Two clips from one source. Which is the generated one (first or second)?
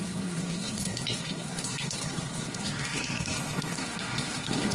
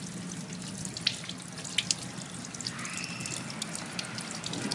first